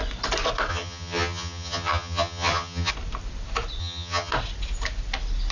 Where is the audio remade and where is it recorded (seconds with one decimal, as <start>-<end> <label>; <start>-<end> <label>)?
0.0-0.7 recorded; 0.7-2.9 remade; 2.9-3.8 recorded; 3.8-4.3 remade; 4.3-5.5 recorded